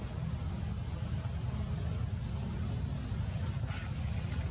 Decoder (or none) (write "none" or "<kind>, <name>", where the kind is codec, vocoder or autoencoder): none